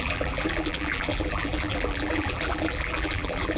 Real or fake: fake